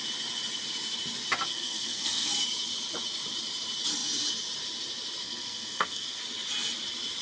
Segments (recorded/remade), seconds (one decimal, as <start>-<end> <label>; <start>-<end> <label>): 0.0-1.5 recorded; 1.5-2.3 remade; 2.3-5.2 recorded; 5.2-6.2 remade; 6.2-7.2 recorded